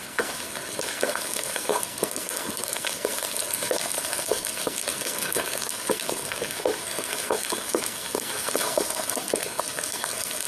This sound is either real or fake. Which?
fake